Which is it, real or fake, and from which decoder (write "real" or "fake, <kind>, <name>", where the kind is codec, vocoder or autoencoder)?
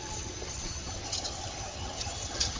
fake, vocoder, HiFi-GAN